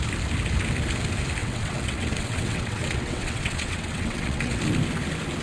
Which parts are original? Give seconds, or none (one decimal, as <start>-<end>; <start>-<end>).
0.0-1.4; 4.6-5.4